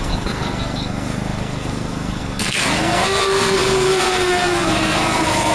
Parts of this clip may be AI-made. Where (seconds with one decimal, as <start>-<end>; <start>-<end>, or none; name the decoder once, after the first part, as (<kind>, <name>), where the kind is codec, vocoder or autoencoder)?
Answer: 0.0-5.5 (codec, SNAC)